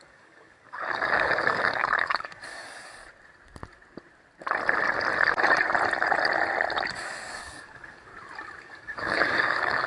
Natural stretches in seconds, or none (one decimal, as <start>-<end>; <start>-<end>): 3.0-6.9; 8.1-8.6